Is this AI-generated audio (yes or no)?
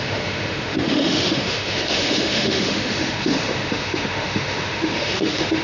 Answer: yes